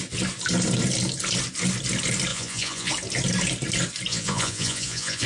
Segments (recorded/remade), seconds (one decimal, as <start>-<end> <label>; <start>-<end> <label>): 0.0-2.3 recorded; 2.3-2.9 remade; 2.9-4.1 recorded; 4.1-5.3 remade